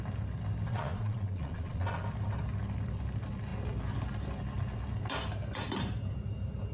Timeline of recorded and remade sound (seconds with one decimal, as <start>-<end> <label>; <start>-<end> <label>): 0.0-0.7 recorded; 0.7-2.0 remade; 2.0-6.7 recorded